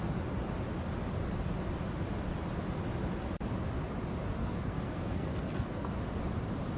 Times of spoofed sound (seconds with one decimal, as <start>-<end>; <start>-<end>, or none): 4.4-5.9